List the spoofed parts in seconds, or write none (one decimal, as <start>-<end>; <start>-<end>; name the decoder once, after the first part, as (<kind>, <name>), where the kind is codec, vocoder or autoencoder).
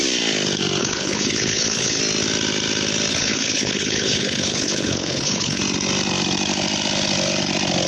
0.8-2.0 (codec, HILCodec); 3.1-5.6